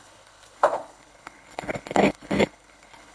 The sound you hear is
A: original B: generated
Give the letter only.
B